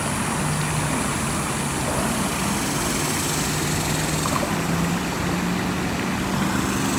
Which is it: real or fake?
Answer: real